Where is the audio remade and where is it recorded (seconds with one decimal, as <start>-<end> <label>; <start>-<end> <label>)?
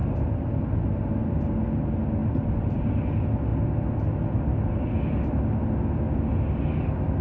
0.0-7.2 recorded